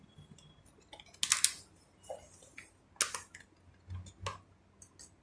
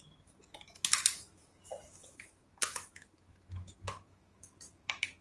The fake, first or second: second